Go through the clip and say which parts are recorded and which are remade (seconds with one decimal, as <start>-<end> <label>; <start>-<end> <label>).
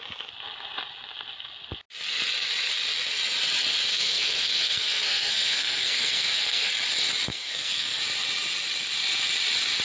0.0-3.9 recorded; 3.9-6.7 remade; 6.7-7.3 recorded; 7.3-8.0 remade; 8.0-9.8 recorded